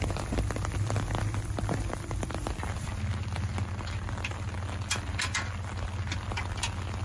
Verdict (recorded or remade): recorded